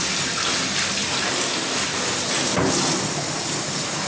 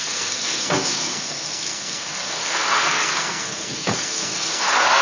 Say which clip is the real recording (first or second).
first